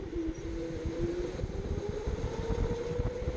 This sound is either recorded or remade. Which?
recorded